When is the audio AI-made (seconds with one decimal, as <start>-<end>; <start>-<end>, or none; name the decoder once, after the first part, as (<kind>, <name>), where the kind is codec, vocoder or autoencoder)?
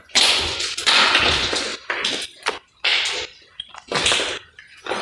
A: 0.0-1.7 (vocoder, Vocos); 4.6-5.0